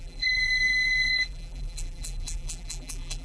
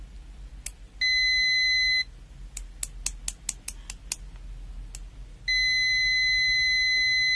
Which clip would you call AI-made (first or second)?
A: first